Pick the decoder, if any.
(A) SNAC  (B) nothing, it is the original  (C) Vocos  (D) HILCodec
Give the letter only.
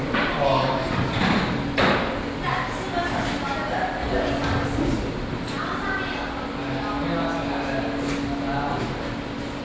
B